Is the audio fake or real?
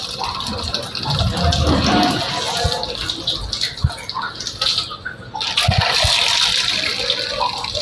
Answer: real